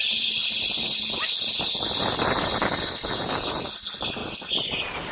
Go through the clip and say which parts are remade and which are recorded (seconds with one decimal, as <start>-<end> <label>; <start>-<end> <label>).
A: 0.0-5.1 recorded